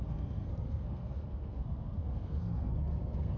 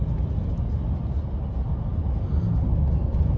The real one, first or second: second